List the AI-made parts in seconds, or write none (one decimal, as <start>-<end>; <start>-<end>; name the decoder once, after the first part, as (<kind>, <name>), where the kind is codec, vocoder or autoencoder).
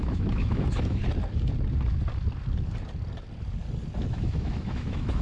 0.0-1.0 (autoencoder, DAC-VAE); 4.1-5.2